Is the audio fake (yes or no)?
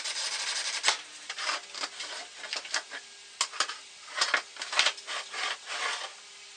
no